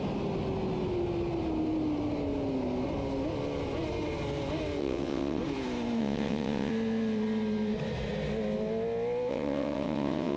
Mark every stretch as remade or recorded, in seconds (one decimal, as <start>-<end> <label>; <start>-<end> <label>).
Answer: 0.0-4.8 recorded; 4.8-5.4 remade; 5.4-6.0 recorded; 6.0-6.7 remade; 6.7-9.3 recorded; 9.3-10.4 remade